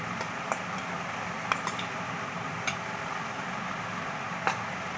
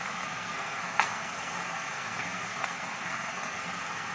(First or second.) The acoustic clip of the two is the first